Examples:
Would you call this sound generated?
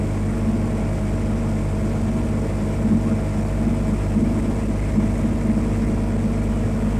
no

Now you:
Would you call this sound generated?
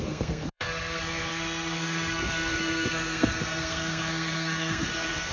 yes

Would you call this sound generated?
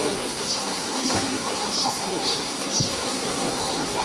yes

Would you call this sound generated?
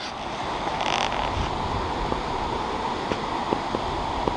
no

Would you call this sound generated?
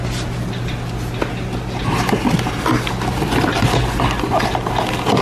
no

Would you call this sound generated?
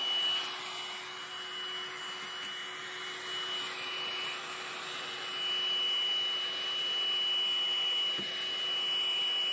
no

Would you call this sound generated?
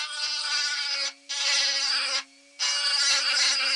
no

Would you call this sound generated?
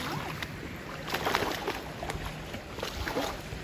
no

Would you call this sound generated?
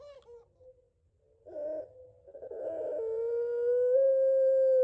no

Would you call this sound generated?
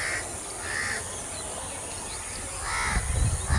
no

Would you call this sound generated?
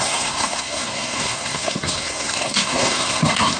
yes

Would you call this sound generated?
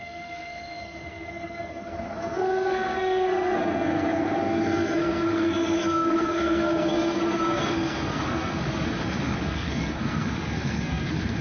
yes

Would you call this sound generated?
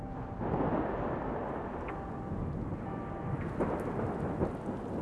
no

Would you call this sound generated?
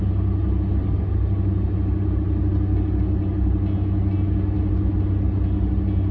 no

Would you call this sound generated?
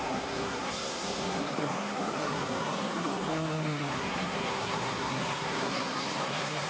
yes